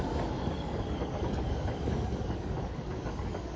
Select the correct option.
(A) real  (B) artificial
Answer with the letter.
B